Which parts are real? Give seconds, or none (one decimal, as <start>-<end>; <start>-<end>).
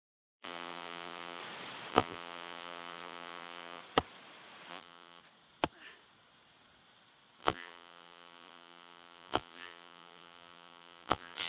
1.4-1.9; 3.8-4.7; 5.2-7.4